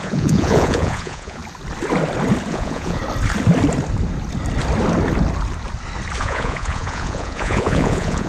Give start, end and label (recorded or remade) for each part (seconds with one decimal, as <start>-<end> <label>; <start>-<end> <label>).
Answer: 0.0-1.4 remade; 1.4-2.5 recorded; 2.5-3.0 remade; 3.0-6.2 recorded; 6.2-8.3 remade